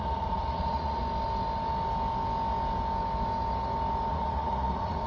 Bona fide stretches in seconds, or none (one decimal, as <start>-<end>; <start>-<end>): 1.0-4.1